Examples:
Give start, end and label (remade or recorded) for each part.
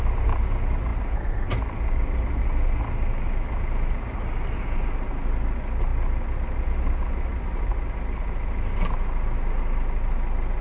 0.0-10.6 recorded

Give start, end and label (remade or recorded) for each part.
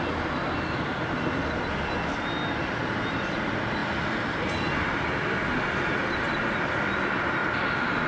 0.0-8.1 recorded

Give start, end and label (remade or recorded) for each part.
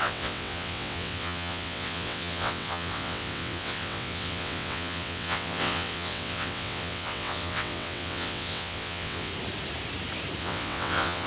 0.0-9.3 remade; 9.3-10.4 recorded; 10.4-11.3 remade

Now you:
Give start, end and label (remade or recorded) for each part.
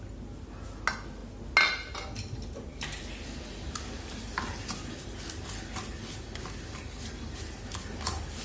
0.0-8.4 recorded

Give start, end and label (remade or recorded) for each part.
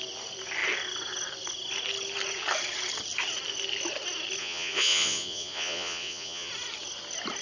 0.0-4.4 recorded; 4.4-6.5 remade; 6.5-7.4 recorded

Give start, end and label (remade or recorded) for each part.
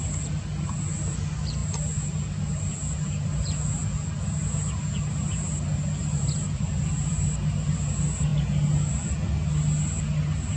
0.0-10.6 recorded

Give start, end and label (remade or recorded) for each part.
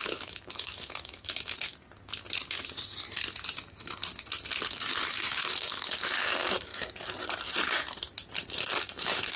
0.0-1.7 remade; 1.7-4.7 recorded; 4.7-6.7 remade; 6.7-8.8 recorded; 8.8-9.4 remade